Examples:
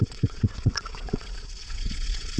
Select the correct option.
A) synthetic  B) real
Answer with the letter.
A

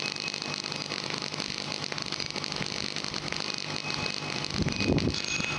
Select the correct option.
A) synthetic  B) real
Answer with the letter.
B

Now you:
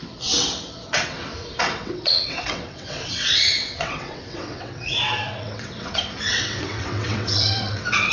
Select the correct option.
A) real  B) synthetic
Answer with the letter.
B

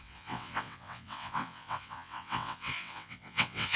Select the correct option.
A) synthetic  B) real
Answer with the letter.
A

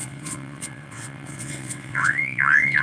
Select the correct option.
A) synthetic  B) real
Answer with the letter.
A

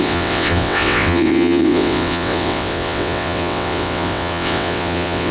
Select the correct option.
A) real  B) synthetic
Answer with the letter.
B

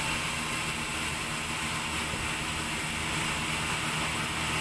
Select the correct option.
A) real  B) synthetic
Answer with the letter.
A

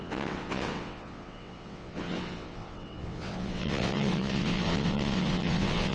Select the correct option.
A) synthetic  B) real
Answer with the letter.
A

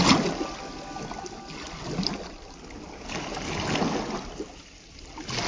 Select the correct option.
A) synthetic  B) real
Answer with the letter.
B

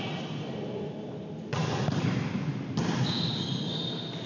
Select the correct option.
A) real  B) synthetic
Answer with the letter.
A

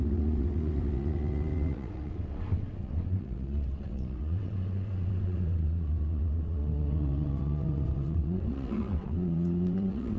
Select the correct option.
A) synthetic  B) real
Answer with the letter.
A